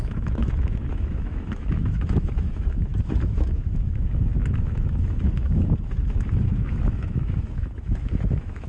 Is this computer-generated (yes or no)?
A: yes